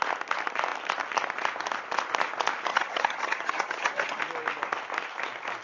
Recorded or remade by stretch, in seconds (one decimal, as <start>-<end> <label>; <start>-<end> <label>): 0.0-2.7 recorded; 2.7-4.2 remade; 4.2-5.6 recorded